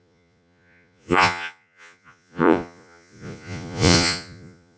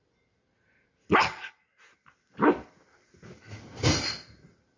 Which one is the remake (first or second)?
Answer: first